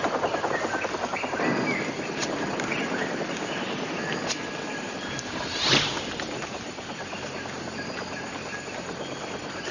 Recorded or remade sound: recorded